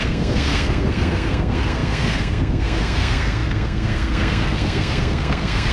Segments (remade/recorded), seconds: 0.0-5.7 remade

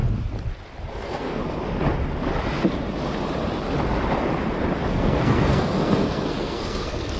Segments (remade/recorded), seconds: 0.0-0.9 recorded; 0.9-1.4 remade; 1.4-4.9 recorded; 4.9-7.2 remade